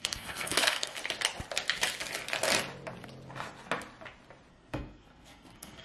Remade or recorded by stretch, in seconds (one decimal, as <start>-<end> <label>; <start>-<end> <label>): 0.0-1.0 remade; 1.0-4.5 recorded; 4.5-5.8 remade